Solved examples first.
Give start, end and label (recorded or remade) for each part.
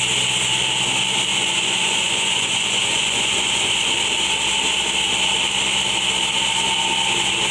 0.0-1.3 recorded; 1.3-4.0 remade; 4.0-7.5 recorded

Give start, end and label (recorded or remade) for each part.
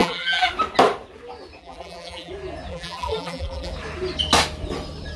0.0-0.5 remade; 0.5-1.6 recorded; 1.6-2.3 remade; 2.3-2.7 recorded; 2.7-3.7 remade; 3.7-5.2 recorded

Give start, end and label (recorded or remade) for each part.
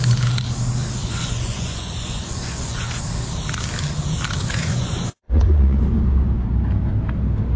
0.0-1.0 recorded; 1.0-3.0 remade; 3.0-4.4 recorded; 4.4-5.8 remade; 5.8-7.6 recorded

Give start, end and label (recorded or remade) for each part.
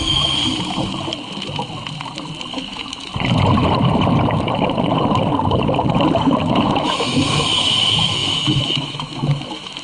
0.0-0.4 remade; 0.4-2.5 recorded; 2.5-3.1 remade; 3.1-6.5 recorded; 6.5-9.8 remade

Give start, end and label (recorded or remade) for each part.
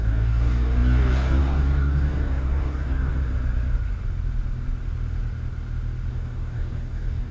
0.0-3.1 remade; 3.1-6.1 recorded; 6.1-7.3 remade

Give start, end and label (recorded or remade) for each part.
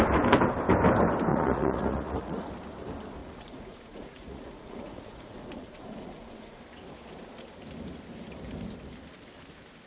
0.0-1.3 recorded; 1.3-2.5 remade; 2.5-3.2 recorded; 3.2-6.6 remade; 6.6-9.9 recorded